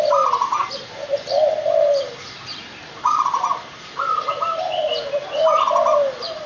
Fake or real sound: real